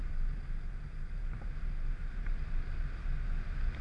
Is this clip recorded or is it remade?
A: recorded